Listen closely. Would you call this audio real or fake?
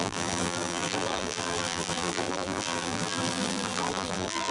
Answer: fake